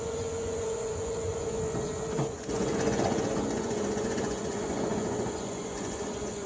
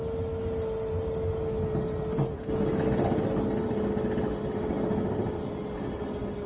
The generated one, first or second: first